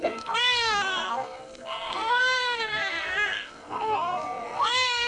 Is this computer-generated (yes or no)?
yes